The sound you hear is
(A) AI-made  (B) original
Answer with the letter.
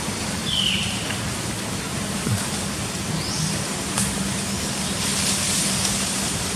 B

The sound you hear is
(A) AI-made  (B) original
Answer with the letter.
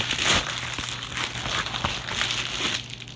B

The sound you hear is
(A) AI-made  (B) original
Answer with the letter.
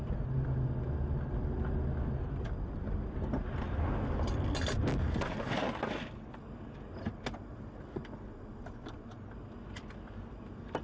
B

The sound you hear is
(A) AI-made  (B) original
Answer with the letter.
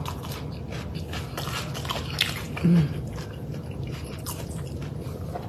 B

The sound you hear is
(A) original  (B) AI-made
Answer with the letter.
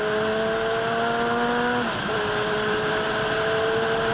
A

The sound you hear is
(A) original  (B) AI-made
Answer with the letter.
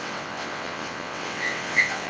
B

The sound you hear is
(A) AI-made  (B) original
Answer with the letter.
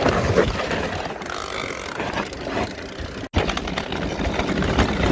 B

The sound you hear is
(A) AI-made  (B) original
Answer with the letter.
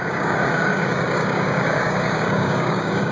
A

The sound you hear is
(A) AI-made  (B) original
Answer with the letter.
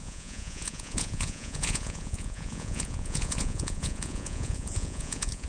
A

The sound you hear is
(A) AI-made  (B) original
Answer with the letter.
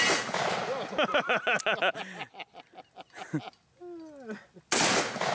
B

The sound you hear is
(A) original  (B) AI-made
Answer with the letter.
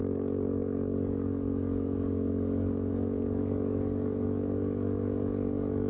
B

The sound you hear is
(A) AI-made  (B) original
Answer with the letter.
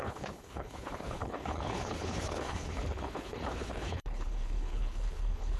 A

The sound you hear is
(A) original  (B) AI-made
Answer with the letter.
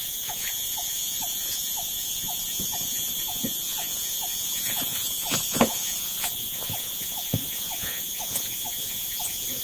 B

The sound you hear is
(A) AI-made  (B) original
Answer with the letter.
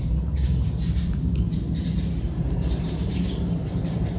A